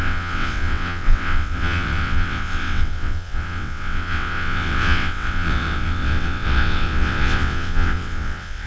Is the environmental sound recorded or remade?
remade